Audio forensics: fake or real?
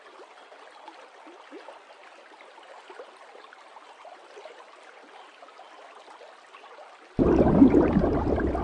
real